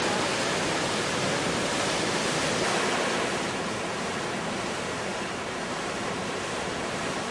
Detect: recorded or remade remade